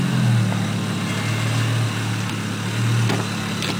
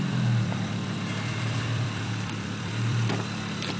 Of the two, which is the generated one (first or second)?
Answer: second